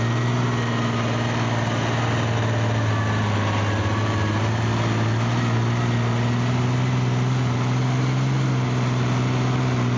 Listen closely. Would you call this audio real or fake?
real